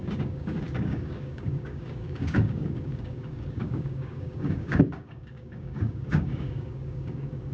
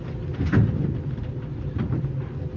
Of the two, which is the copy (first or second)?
first